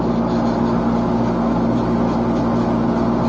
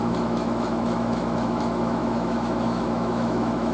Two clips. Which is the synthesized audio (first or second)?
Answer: second